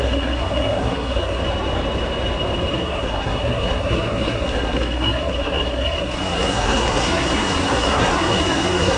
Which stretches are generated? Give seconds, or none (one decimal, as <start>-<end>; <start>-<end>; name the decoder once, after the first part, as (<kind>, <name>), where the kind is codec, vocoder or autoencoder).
0.0-1.4 (codec, SNAC); 2.7-9.0

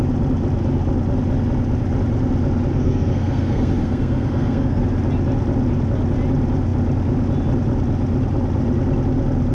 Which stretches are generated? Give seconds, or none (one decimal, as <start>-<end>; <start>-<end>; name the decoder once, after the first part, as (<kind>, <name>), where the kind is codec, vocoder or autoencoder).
2.7-4.8 (codec, SNAC)